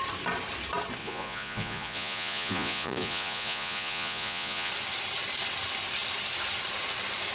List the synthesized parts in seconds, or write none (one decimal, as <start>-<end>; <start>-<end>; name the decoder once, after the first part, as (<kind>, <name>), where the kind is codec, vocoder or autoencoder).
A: 1.0-4.7 (vocoder, Vocos)